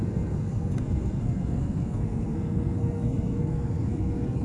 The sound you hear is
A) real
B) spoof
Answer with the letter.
B